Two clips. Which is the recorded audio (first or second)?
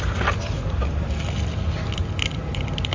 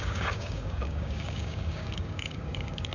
first